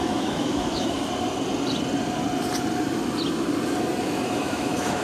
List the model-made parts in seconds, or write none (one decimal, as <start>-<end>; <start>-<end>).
0.0-1.0; 4.0-5.0